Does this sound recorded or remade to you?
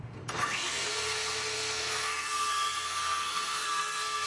remade